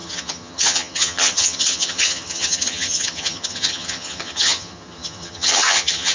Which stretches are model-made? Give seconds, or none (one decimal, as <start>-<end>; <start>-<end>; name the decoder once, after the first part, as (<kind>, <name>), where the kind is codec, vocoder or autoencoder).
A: 0.0-6.1 (vocoder, HiFi-GAN)